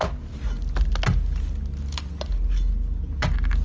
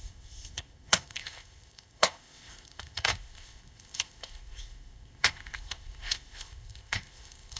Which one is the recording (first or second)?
first